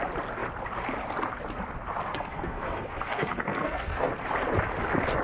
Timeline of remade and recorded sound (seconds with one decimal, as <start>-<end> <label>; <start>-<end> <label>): 0.0-2.1 recorded; 2.1-4.1 remade; 4.1-5.2 recorded